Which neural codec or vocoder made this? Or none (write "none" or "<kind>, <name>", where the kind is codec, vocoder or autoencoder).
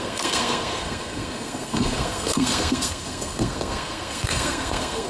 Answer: codec, SNAC